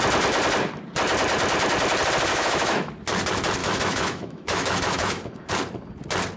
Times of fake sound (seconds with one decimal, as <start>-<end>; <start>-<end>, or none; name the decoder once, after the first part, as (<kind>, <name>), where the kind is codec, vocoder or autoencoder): 2.3-2.9 (autoencoder, DAC-VAE); 3.6-5.5